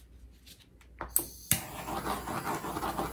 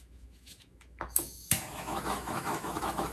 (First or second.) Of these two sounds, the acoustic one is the first